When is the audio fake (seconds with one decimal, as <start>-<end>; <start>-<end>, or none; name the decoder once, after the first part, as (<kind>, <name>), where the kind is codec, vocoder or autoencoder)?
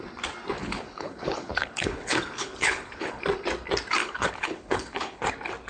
0.6-3.2 (codec, HILCodec); 4.0-5.2